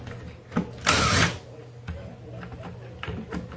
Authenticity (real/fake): real